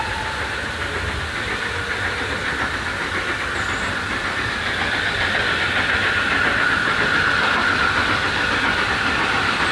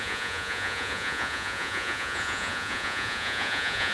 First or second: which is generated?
second